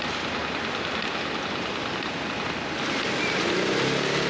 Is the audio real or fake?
real